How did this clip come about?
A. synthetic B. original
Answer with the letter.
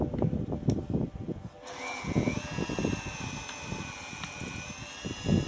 B